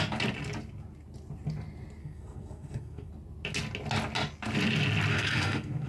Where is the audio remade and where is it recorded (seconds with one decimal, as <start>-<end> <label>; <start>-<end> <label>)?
0.0-2.0 recorded; 2.0-3.1 remade; 3.1-5.1 recorded; 5.1-5.9 remade